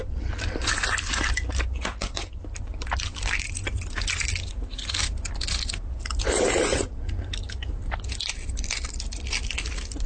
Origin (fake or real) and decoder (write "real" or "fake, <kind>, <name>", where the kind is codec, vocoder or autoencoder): real